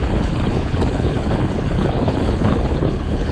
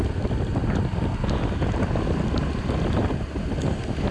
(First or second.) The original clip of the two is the second